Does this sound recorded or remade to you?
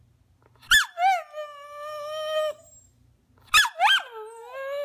recorded